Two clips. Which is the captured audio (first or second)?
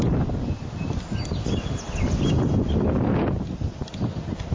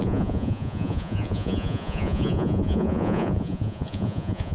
first